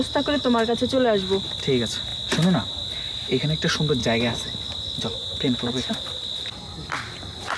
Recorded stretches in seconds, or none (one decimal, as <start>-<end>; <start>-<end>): 0.0-5.2; 5.9-7.6